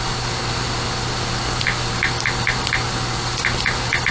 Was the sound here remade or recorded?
recorded